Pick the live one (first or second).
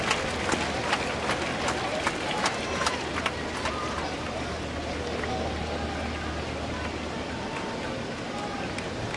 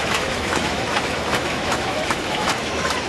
first